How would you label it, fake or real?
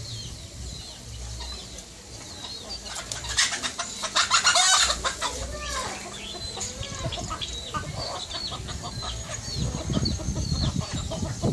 real